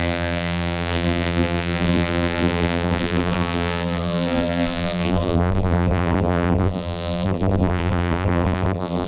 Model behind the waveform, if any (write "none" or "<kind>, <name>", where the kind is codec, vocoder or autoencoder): vocoder, BigVGAN v2